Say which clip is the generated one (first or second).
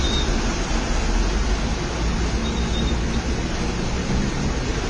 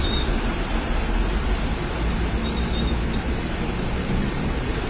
second